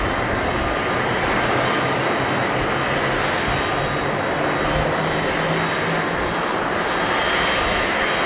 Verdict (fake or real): real